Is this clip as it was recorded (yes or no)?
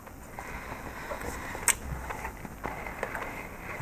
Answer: yes